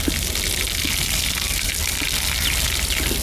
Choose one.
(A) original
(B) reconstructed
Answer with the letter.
A